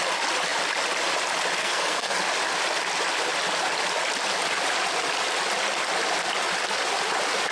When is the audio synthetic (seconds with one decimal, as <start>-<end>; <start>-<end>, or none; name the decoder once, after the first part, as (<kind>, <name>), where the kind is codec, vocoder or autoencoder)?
1.6-2.2 (codec, SNAC)